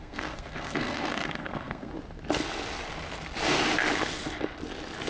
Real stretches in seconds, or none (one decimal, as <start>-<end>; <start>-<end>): 1.9-5.1